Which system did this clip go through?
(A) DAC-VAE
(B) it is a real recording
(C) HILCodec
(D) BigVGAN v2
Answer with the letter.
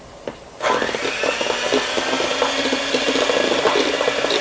B